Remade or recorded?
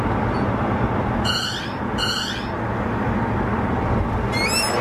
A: recorded